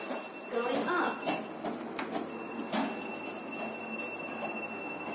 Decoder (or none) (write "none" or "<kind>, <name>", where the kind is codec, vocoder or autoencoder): none